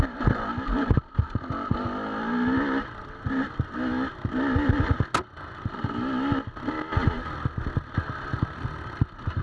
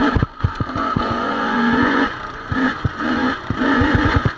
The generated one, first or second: second